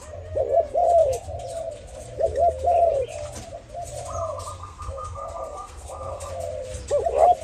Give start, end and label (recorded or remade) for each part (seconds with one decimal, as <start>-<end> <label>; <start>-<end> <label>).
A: 0.0-4.6 recorded; 4.6-6.3 remade; 6.3-7.4 recorded